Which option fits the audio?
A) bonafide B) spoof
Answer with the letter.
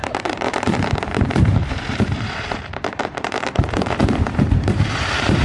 B